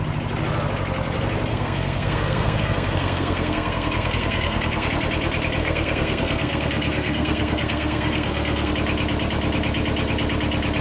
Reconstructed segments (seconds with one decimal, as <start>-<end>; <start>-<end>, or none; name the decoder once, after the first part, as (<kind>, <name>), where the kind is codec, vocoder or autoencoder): 1.5-4.9 (codec, SNAC); 5.6-8.7